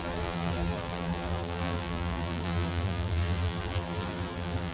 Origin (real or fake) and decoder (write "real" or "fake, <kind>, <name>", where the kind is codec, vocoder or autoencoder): fake, vocoder, BigVGAN v2